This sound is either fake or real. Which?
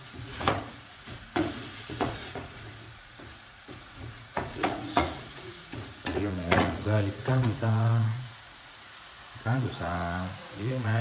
fake